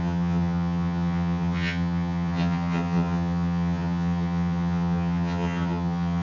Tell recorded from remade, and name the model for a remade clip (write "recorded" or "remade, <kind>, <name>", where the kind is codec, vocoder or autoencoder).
remade, vocoder, HiFi-GAN